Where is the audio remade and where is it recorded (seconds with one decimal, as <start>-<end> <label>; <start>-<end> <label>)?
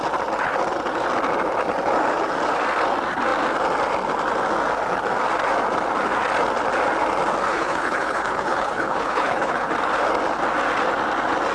0.0-7.5 recorded; 7.5-9.7 remade; 9.7-11.5 recorded